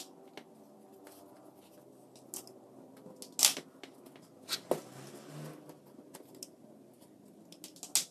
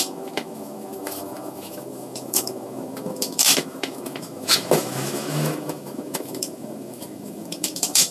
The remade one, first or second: second